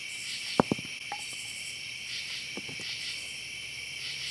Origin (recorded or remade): remade